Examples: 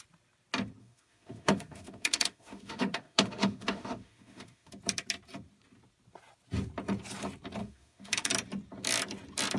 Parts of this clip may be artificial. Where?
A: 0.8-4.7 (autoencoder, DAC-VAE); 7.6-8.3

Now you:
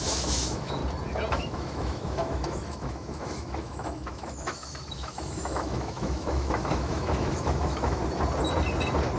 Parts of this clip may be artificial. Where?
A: 0.0-0.8 (autoencoder, DAC-VAE); 1.3-8.0

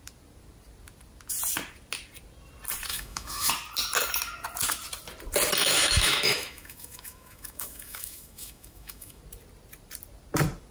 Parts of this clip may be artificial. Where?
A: 2.9-3.5 (autoencoder, DAC-VAE); 5.6-9.2

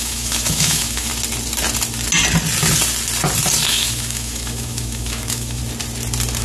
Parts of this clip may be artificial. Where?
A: 0.0-1.1 (autoencoder, DAC-VAE); 3.7-5.6

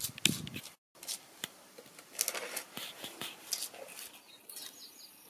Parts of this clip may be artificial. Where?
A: none

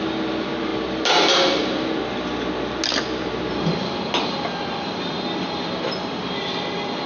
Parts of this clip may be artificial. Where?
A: none

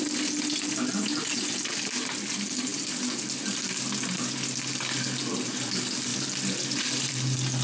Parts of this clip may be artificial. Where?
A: none

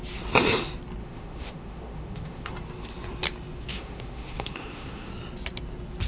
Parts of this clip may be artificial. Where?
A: 1.0-2.5 (autoencoder, DAC-VAE); 3.7-5.1